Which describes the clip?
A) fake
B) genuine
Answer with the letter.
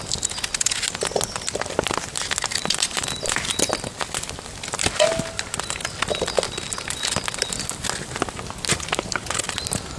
B